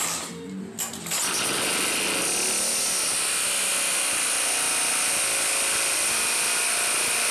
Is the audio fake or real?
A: real